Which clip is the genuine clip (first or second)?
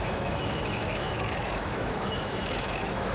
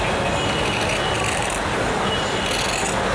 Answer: second